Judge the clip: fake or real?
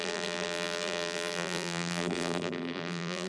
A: fake